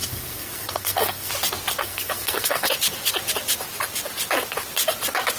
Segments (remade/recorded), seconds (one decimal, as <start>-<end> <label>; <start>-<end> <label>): 0.0-1.3 remade; 1.3-1.8 recorded; 1.8-2.7 remade; 2.7-5.4 recorded